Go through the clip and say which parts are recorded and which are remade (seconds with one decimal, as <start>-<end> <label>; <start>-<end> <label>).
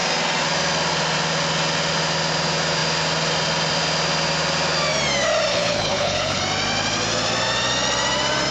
0.0-5.5 recorded; 5.5-6.4 remade; 6.4-8.5 recorded